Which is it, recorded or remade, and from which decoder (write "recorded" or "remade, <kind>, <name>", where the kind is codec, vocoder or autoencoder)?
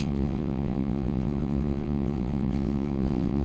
remade, vocoder, WaveNeXt